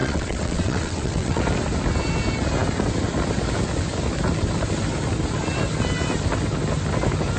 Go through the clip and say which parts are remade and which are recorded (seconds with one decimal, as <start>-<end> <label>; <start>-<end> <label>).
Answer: 0.0-1.4 remade; 1.4-7.4 recorded